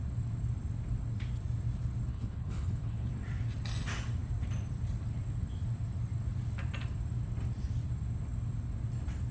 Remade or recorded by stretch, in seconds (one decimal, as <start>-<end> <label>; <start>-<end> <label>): 0.0-2.1 recorded; 2.1-3.1 remade; 3.1-9.3 recorded